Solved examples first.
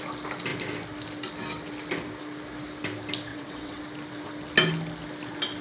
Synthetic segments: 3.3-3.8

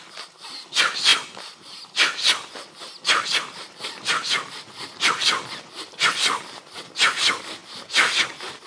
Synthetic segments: none

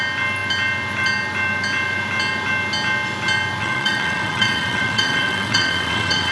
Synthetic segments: 3.6-6.3

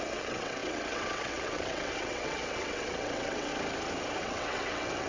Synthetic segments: 0.0-3.5; 4.2-5.1

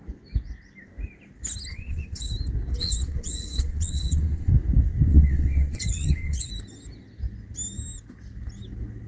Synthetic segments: 1.7-2.3; 2.8-4.5; 5.1-6.5

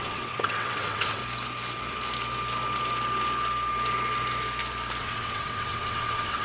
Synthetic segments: 0.0-1.2; 5.0-6.4

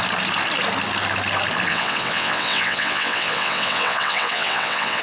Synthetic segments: 1.7-5.0